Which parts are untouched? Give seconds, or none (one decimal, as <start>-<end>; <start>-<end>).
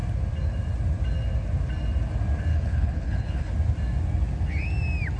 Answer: 0.0-2.5; 3.5-5.2